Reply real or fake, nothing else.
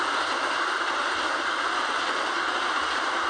real